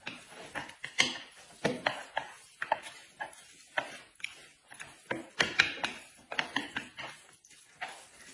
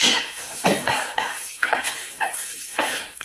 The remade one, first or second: second